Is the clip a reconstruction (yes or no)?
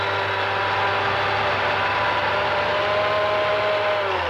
no